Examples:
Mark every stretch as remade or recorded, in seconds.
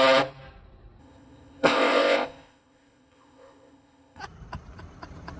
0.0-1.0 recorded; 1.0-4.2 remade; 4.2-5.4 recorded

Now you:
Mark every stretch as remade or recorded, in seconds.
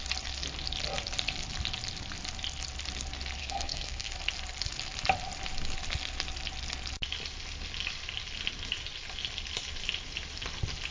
0.0-3.4 recorded; 3.4-4.1 remade; 4.1-10.9 recorded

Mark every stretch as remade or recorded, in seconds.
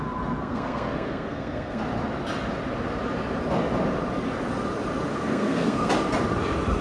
0.0-0.4 recorded; 0.4-1.8 remade; 1.8-5.1 recorded; 5.1-5.9 remade; 5.9-6.8 recorded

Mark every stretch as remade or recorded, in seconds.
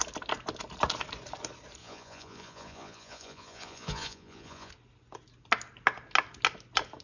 0.0-1.8 recorded; 1.8-4.7 remade; 4.7-7.0 recorded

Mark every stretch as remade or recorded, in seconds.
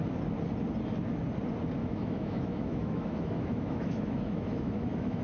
0.0-1.8 recorded; 1.8-5.2 remade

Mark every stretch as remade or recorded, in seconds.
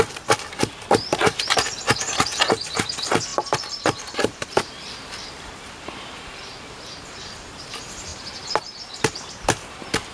0.0-3.3 recorded; 3.3-7.7 remade; 7.7-10.1 recorded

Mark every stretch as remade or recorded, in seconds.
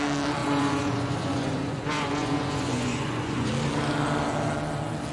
0.0-0.4 recorded; 0.4-3.5 remade; 3.5-5.1 recorded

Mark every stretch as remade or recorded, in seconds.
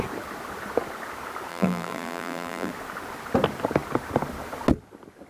0.0-1.5 recorded; 1.5-2.7 remade; 2.7-5.3 recorded